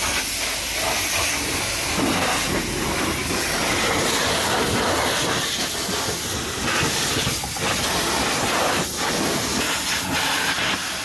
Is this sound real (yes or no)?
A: yes